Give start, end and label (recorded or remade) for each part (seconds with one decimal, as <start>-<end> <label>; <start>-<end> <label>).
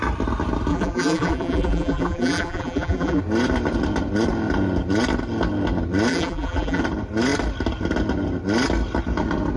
0.0-0.7 recorded; 0.7-3.2 remade; 3.2-6.1 recorded; 6.1-6.8 remade; 6.8-9.6 recorded